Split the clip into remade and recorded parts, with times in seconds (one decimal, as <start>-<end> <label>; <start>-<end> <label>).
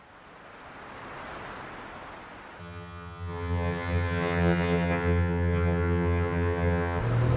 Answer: 0.0-2.6 recorded; 2.6-7.0 remade; 7.0-7.4 recorded